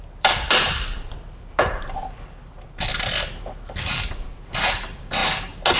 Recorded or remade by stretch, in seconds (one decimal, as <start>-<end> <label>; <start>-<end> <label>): 0.0-2.9 remade; 2.9-3.8 recorded; 3.8-5.2 remade; 5.2-5.8 recorded